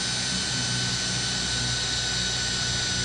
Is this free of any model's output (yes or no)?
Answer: yes